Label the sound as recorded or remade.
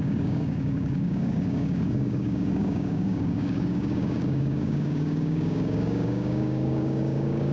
remade